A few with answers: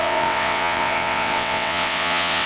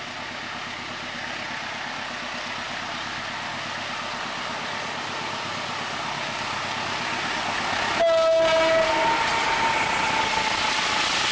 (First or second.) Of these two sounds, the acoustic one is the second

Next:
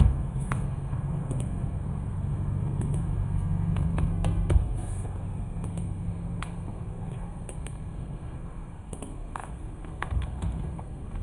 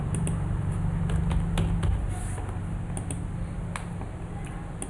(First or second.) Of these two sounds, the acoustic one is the second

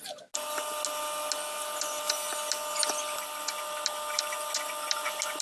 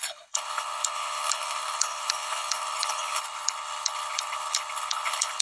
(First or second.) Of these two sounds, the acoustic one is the first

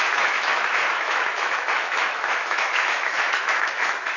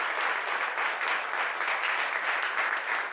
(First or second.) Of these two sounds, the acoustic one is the second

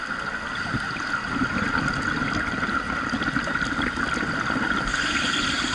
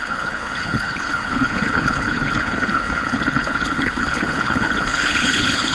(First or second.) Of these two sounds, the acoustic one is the first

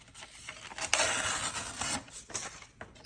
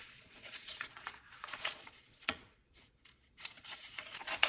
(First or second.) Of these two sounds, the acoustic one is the first